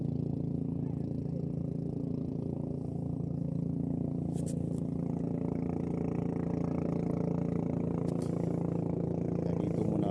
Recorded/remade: recorded